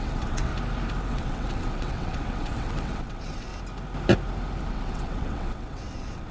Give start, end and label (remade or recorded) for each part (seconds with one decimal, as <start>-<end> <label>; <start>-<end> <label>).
0.0-0.5 remade; 0.5-1.1 recorded; 1.1-3.5 remade; 3.5-4.7 recorded; 4.7-6.3 remade